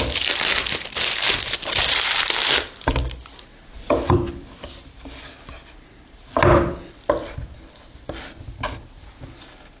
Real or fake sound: real